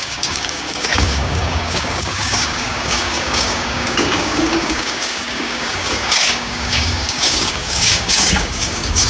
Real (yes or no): no